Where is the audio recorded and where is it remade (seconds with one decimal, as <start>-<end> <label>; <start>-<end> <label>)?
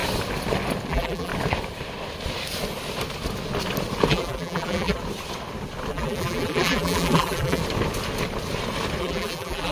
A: 0.0-0.9 recorded; 0.9-1.3 remade; 1.3-4.1 recorded; 4.1-5.0 remade; 5.0-5.9 recorded; 5.9-7.6 remade; 7.6-9.0 recorded; 9.0-9.7 remade